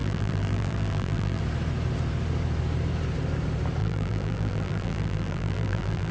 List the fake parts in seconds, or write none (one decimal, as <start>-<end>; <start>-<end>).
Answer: 0.0-1.4; 3.8-6.1